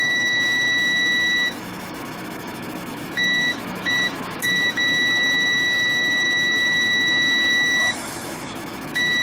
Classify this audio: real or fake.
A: fake